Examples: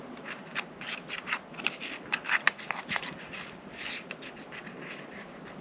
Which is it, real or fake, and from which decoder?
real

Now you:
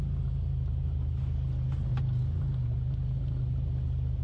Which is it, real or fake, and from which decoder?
real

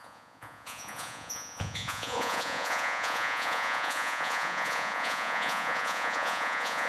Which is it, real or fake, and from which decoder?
fake, vocoder, Vocos